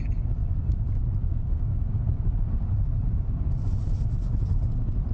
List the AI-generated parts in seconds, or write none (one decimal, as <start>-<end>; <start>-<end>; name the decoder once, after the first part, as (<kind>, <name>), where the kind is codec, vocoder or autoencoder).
0.4-3.5 (vocoder, BigVGAN v2)

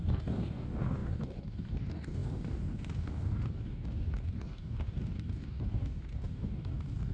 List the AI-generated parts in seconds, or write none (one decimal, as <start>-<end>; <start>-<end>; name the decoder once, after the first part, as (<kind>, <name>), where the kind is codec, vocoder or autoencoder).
0.0-7.1 (codec, DAC)

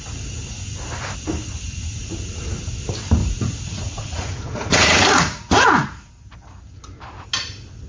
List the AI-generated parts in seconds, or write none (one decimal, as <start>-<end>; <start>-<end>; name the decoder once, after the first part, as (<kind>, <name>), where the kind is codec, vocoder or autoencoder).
3.2-6.1 (vocoder, Vocos)

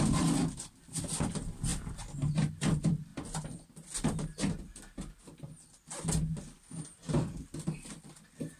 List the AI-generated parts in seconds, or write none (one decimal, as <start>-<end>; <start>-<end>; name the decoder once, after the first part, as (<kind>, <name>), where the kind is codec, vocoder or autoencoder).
none

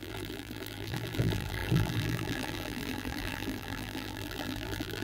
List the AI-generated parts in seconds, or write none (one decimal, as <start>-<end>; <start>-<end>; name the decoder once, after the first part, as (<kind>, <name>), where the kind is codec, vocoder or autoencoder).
0.0-5.0 (vocoder, BigVGAN v2)

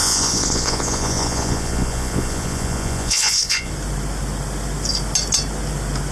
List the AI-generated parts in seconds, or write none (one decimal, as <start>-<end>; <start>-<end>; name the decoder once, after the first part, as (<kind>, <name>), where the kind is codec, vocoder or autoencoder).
0.0-3.7 (vocoder, Vocos)